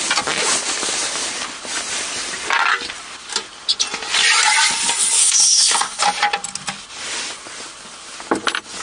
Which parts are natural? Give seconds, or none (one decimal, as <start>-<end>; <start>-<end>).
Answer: 0.0-5.2; 6.0-8.8